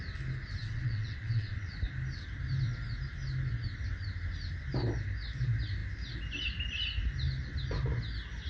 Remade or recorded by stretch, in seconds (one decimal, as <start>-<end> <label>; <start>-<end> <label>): 0.0-0.6 recorded; 0.6-1.7 remade; 1.7-8.5 recorded